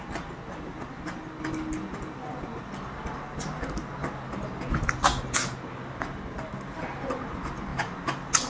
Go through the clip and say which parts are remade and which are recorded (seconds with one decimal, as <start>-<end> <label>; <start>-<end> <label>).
0.0-8.5 recorded